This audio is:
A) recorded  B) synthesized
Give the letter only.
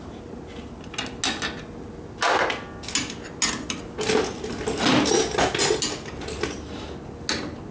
A